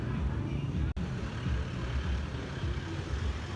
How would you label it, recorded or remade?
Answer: recorded